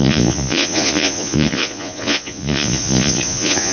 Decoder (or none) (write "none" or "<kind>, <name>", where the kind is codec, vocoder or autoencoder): vocoder, Vocos